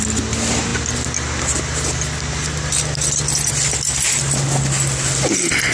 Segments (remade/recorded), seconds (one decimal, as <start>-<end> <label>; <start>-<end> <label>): 0.0-5.7 recorded